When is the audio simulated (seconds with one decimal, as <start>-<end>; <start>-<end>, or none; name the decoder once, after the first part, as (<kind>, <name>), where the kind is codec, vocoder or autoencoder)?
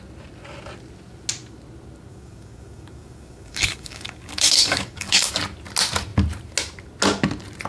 2.1-5.3 (codec, DAC)